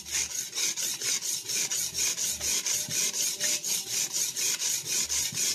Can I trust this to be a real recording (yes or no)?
yes